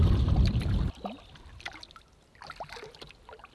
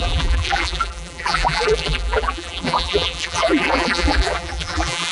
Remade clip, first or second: second